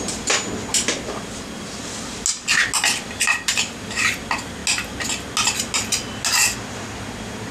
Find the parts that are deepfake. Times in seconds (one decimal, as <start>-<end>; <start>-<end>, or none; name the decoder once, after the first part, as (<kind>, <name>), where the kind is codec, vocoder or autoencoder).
none